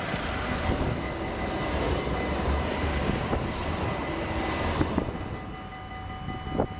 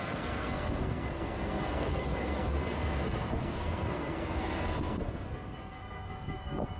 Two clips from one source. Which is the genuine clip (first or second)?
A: first